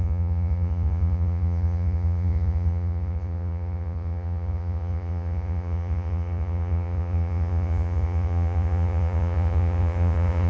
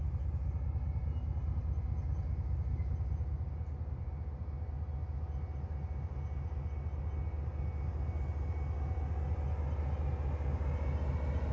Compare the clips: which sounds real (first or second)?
second